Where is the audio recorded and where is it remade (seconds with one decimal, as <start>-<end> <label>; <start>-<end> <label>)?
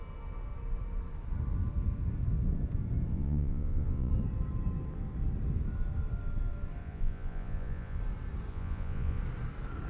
0.0-3.1 recorded; 3.1-4.1 remade; 4.1-6.8 recorded; 6.8-8.0 remade; 8.0-8.5 recorded; 8.5-9.2 remade; 9.2-9.9 recorded